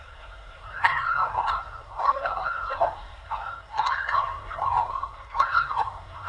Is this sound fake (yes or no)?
yes